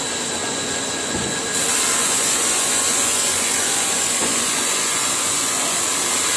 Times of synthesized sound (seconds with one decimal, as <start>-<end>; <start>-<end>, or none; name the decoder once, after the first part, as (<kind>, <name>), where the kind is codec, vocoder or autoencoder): 0.4-1.4 (vocoder, Vocos); 2.0-5.8